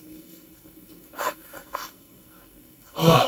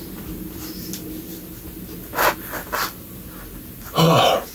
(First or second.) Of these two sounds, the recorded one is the second